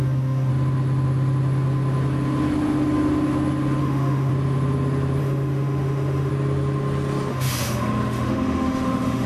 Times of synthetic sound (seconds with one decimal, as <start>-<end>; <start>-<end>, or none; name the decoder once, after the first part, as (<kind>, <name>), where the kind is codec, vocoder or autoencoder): 0.0-0.5 (autoencoder, DAC-VAE); 3.8-4.3; 5.2-6.3; 7.3-9.3